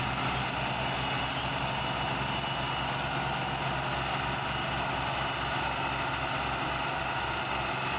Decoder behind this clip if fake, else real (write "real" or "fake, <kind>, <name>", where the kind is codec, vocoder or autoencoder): real